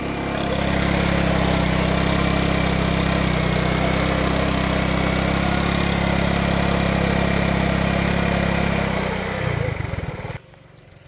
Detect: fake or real real